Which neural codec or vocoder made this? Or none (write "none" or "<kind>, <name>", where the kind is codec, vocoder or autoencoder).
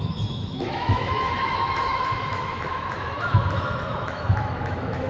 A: autoencoder, DAC-VAE